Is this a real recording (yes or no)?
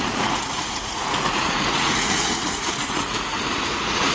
no